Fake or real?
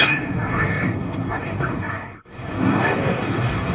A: fake